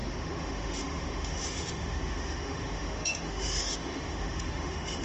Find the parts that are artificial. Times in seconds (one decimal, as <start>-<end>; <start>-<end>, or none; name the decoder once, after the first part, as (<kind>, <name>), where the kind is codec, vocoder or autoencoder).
0.0-5.0 (autoencoder, DAC-VAE)